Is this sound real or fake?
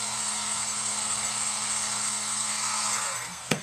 fake